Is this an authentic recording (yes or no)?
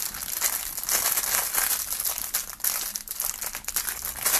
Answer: yes